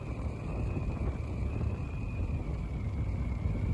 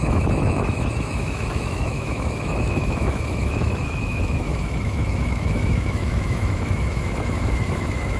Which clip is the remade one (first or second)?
second